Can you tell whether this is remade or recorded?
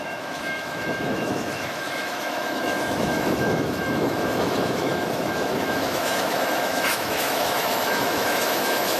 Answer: remade